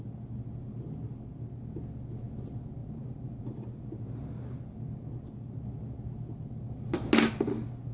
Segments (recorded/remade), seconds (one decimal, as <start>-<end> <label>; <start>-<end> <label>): 0.0-2.8 recorded; 2.8-3.8 remade; 3.8-7.9 recorded